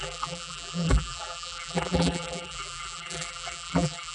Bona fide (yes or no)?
no